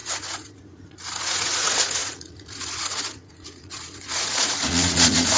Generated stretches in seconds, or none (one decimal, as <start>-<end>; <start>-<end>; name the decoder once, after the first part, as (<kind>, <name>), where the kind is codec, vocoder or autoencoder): 0.0-5.4 (vocoder, Vocos)